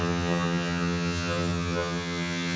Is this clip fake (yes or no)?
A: yes